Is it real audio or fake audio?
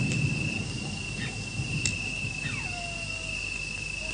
real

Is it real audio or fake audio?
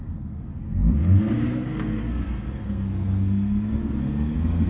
fake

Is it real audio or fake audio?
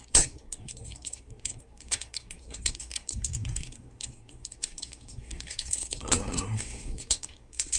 fake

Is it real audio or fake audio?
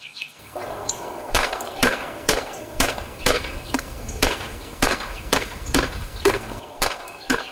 fake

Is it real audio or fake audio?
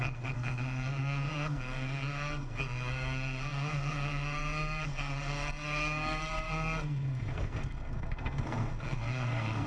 fake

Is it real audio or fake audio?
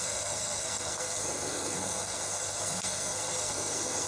fake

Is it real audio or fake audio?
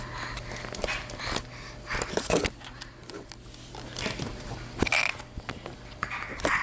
real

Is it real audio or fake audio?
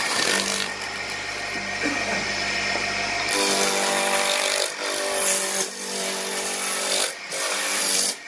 real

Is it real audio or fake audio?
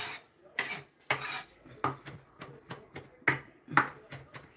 real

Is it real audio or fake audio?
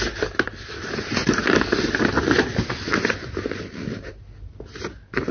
real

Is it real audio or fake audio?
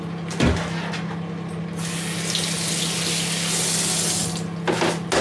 real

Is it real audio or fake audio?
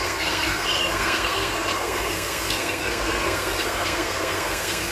fake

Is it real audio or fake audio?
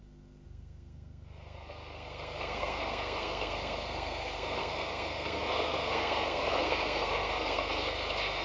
fake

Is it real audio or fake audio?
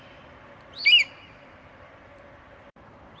real